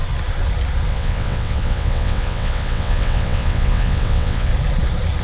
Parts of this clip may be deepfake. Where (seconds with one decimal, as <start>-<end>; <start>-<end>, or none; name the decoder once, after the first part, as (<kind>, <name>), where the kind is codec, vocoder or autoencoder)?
0.9-4.5 (vocoder, WaveNeXt)